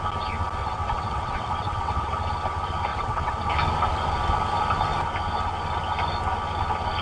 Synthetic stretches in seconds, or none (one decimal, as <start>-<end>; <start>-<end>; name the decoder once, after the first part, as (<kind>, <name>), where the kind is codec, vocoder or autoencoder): 0.6-2.1 (vocoder, WaveNeXt); 2.9-3.5